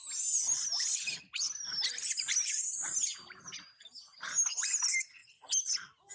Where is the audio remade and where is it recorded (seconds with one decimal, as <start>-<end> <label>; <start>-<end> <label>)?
0.0-6.1 recorded

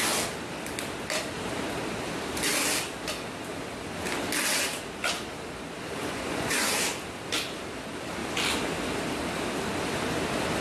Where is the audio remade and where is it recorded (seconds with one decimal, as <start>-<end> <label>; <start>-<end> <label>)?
0.0-6.0 recorded; 6.0-6.7 remade; 6.7-10.6 recorded

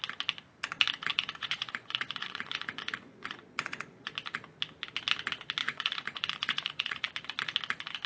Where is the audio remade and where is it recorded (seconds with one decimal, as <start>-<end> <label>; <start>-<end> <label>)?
0.0-1.1 recorded; 1.1-4.1 remade; 4.1-5.6 recorded; 5.6-7.1 remade; 7.1-8.1 recorded

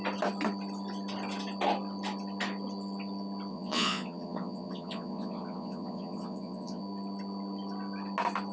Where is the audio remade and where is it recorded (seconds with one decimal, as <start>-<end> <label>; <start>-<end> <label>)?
0.0-3.5 recorded; 3.5-6.8 remade; 6.8-8.5 recorded

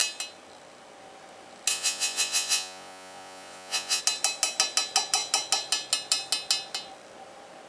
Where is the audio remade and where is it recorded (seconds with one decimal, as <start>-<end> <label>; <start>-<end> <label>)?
0.0-1.7 recorded; 1.7-4.0 remade; 4.0-7.7 recorded